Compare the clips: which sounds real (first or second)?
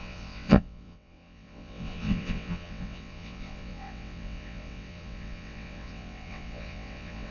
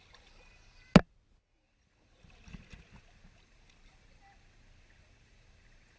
second